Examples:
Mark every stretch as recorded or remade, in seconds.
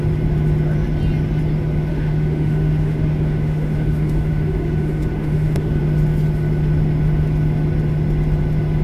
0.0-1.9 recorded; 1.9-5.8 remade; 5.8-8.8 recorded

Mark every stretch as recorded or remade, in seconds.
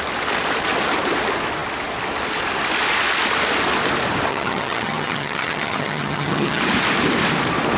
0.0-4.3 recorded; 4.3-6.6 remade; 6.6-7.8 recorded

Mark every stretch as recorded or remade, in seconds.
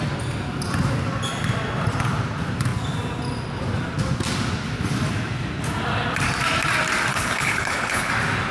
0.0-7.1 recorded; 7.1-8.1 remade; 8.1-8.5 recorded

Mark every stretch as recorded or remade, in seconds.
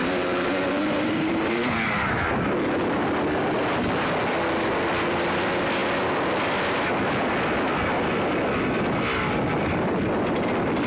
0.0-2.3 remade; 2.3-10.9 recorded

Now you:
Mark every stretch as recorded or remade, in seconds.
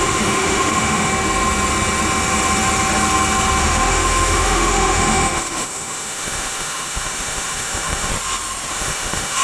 0.0-1.1 remade; 1.1-3.6 recorded; 3.6-8.1 remade; 8.1-8.7 recorded; 8.7-9.4 remade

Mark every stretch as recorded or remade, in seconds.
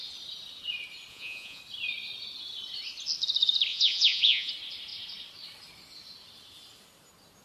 0.0-1.1 recorded; 1.1-1.6 remade; 1.6-3.7 recorded; 3.7-4.5 remade; 4.5-7.4 recorded